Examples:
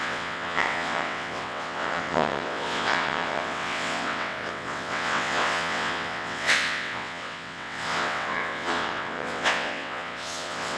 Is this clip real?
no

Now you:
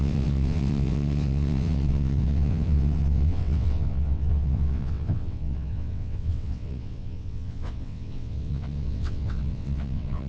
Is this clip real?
no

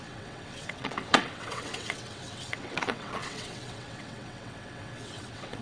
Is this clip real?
no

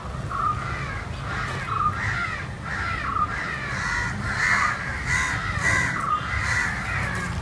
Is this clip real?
yes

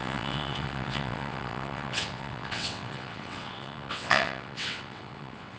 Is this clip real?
no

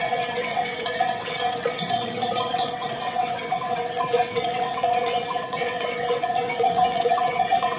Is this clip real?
no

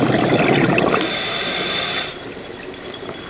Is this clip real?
yes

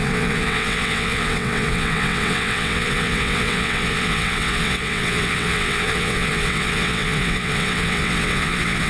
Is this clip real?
no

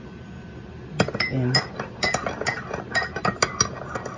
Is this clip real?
yes